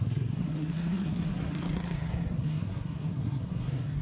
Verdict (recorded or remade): remade